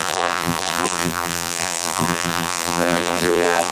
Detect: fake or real fake